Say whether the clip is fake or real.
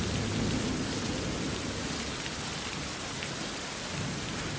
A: real